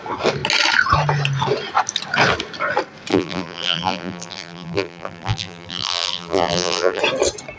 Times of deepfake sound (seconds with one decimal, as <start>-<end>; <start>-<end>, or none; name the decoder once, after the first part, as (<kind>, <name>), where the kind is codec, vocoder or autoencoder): 3.1-7.0 (vocoder, BigVGAN v2)